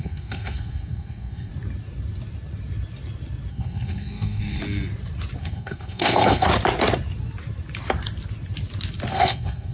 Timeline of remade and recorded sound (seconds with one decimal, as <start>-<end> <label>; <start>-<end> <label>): 0.0-1.5 remade; 1.5-3.5 recorded; 3.5-4.6 remade; 4.6-5.4 recorded; 5.4-6.5 remade; 6.5-9.1 recorded; 9.1-9.7 remade